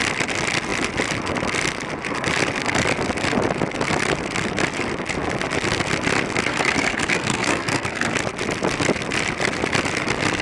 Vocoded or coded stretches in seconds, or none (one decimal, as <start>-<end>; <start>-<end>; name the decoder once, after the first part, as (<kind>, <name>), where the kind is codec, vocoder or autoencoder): 6.5-8.1 (codec, SNAC)